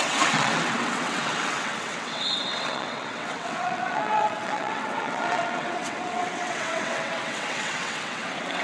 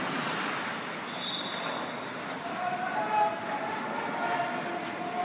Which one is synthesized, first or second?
first